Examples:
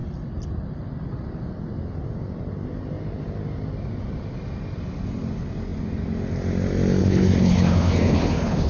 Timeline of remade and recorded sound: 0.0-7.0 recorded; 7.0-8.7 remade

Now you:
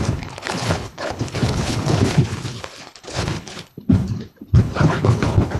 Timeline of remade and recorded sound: 0.0-5.6 remade

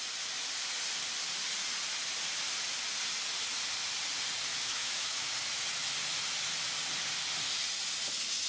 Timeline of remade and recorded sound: 0.0-4.5 recorded; 4.5-5.3 remade; 5.3-8.5 recorded

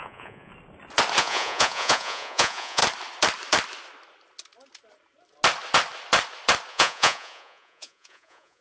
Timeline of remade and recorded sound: 0.0-0.5 remade; 0.5-1.2 recorded; 1.2-2.8 remade; 2.8-6.7 recorded; 6.7-8.6 remade